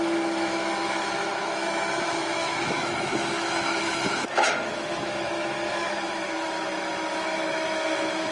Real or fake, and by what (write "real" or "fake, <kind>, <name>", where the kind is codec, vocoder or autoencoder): fake, autoencoder, DAC-VAE